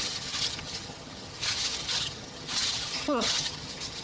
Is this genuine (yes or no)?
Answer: no